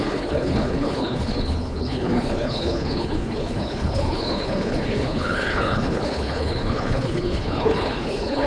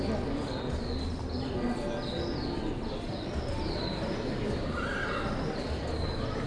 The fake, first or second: first